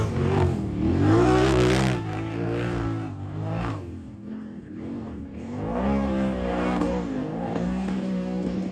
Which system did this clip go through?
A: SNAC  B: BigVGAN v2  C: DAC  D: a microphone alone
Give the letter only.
C